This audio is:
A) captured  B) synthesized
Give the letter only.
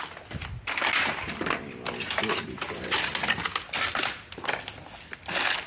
A